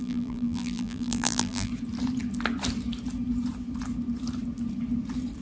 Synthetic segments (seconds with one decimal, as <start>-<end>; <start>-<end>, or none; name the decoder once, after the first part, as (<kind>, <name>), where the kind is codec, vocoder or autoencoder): 0.0-1.7 (vocoder, BigVGAN v2)